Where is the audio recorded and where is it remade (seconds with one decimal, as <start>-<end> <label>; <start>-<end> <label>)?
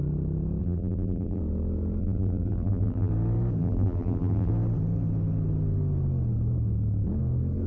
0.0-0.6 recorded; 0.6-1.4 remade; 1.4-2.0 recorded; 2.0-3.1 remade; 3.1-3.6 recorded; 3.6-4.5 remade; 4.5-7.7 recorded